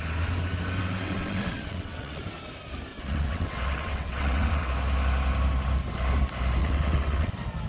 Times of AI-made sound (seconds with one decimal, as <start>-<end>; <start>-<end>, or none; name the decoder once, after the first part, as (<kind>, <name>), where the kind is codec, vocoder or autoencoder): 0.8-2.2 (vocoder, WaveNeXt); 2.9-4.7; 6.6-7.3